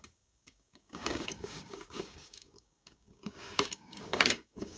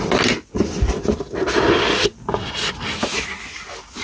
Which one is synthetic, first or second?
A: first